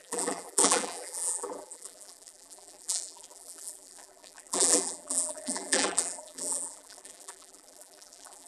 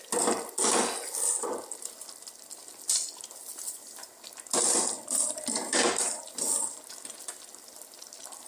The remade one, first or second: first